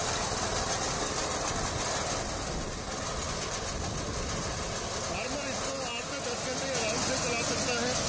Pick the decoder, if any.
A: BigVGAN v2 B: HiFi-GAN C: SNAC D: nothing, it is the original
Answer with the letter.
D